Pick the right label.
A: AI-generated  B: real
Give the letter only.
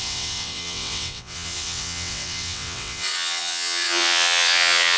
A